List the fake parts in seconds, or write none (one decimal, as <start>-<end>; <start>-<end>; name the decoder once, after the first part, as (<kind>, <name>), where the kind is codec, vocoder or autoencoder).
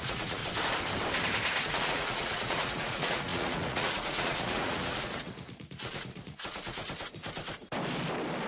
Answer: 0.0-0.4 (vocoder, Vocos); 1.6-6.8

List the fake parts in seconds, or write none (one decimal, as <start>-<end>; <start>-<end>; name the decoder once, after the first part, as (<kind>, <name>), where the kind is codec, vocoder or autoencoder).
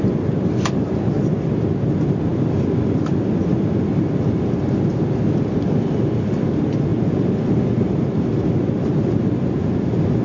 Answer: none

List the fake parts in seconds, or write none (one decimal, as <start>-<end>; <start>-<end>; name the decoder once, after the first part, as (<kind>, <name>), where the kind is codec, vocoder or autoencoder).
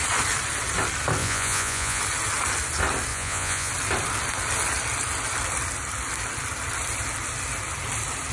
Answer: 1.2-2.0 (vocoder, Vocos); 3.1-3.7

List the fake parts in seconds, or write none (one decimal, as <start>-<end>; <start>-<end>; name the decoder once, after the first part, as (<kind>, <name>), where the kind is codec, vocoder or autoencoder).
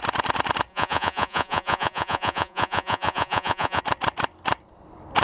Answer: 0.7-3.8 (vocoder, Vocos)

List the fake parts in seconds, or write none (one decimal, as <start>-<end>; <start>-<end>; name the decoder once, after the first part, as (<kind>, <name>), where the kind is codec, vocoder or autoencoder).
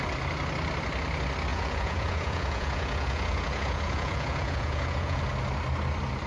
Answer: 1.5-5.2 (vocoder, Vocos)